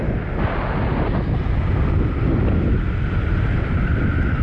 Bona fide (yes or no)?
yes